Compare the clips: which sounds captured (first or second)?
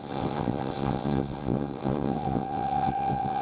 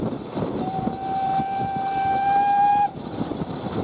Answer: second